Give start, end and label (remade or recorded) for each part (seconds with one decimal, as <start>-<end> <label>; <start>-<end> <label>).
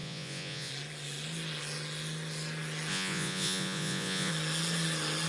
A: 0.0-0.7 remade; 0.7-2.9 recorded; 2.9-4.3 remade; 4.3-5.3 recorded